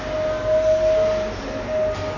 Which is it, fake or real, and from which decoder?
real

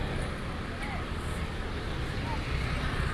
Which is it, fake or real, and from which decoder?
real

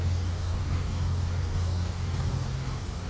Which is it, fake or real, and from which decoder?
fake, codec, DAC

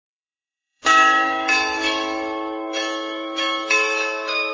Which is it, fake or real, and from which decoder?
fake, codec, DAC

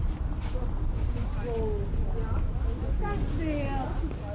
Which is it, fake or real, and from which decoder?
real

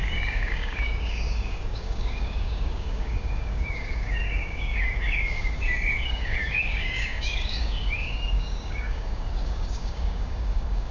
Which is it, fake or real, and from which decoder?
fake, codec, DAC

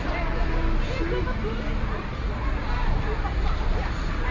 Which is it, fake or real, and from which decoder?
real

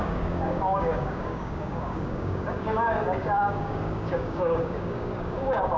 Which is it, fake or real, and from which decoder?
fake, codec, DAC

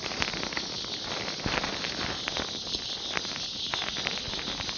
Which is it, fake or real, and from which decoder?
real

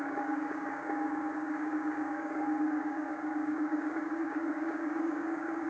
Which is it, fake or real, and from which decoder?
fake, codec, DAC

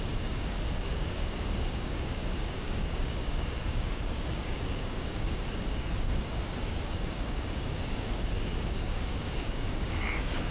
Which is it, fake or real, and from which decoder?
fake, codec, DAC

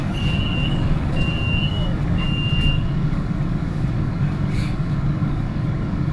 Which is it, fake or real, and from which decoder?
fake, codec, DAC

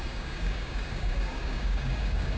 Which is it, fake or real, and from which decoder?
fake, codec, DAC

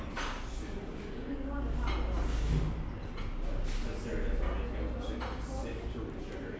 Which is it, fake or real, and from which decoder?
real